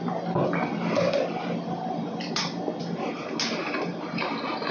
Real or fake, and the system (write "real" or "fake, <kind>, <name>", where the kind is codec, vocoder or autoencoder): real